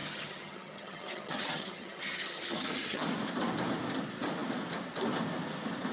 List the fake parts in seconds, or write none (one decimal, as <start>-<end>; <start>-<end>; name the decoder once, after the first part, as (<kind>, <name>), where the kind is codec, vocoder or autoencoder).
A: 0.0-3.0 (vocoder, HiFi-GAN)